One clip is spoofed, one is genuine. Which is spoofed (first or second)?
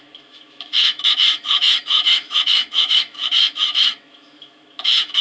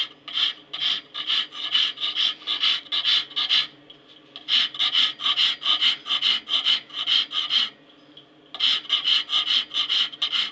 first